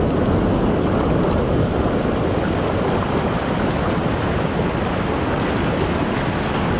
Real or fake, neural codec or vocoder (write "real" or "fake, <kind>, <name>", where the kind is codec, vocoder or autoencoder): real